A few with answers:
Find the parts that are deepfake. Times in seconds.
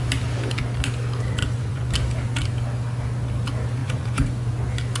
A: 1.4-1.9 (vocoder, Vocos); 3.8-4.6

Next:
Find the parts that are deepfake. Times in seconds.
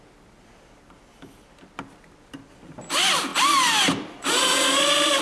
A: none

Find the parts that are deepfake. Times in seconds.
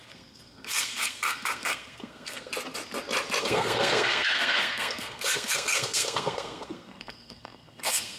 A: 0.0-2.5 (codec, SNAC); 3.4-8.2